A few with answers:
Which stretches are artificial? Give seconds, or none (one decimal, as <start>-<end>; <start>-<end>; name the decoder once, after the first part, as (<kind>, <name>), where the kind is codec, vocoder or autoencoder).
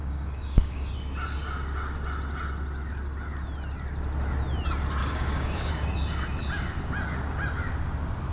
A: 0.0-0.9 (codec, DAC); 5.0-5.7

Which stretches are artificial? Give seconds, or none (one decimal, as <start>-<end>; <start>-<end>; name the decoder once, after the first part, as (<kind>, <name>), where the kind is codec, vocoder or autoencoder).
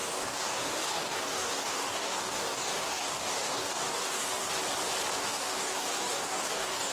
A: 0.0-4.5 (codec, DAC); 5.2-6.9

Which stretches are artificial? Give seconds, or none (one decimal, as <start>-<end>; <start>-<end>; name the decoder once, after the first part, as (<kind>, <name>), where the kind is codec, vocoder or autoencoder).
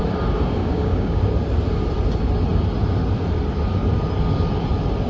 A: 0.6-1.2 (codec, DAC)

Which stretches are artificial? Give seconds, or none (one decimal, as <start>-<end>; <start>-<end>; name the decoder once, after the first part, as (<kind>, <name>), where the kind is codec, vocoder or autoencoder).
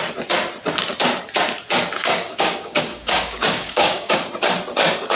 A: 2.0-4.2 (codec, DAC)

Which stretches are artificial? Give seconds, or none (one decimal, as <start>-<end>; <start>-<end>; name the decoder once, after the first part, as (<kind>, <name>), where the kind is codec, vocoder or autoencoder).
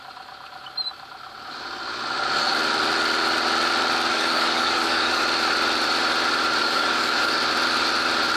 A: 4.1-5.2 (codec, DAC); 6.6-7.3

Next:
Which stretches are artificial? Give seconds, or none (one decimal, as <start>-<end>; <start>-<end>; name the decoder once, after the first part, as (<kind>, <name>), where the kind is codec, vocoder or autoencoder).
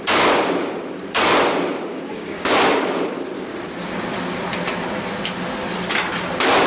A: 1.9-2.5 (codec, DAC)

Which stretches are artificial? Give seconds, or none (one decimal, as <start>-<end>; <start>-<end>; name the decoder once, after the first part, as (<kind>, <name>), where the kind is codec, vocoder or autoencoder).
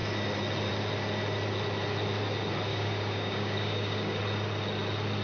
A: 2.7-4.2 (codec, DAC)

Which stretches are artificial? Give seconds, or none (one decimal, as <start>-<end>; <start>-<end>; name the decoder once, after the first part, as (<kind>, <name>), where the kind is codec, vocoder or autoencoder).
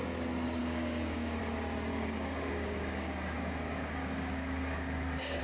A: 0.6-1.4 (codec, DAC); 1.9-5.4